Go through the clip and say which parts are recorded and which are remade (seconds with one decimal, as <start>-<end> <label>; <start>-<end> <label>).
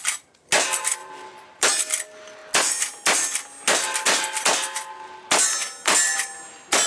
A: 0.0-1.0 recorded; 1.0-1.7 remade; 1.7-6.9 recorded